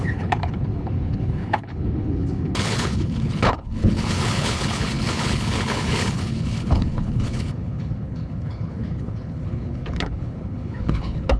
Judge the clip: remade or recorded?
remade